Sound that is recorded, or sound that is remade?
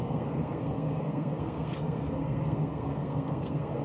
remade